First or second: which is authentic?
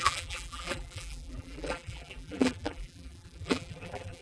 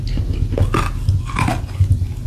second